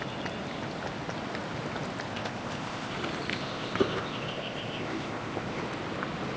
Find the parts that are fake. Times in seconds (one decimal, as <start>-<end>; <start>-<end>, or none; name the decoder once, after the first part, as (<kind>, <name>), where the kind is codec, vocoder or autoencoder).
2.1-2.9 (codec, ZipCodec); 3.3-5.6